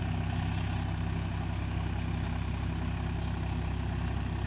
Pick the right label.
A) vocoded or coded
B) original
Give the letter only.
B